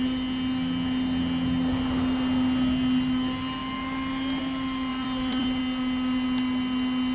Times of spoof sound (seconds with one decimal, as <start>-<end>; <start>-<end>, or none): 4.9-5.6